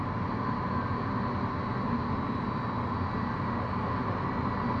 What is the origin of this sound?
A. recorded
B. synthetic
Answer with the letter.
A